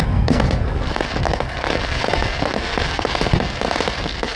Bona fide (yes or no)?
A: no